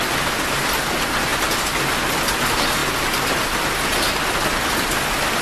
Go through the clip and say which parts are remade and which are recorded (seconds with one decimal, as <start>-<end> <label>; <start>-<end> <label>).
0.0-5.4 recorded